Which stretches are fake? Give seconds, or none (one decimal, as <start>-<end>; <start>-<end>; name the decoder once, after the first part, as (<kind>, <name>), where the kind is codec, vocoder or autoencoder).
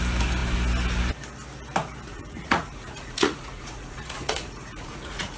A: 2.1-5.4 (vocoder, Vocos)